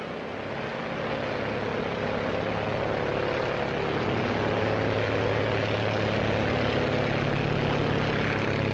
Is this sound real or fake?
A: real